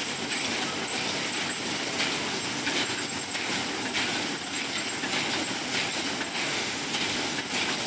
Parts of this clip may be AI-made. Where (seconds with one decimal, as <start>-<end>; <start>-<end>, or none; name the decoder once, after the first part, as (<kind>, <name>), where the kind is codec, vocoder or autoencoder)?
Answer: 6.3-6.8 (autoencoder, DAC-VAE)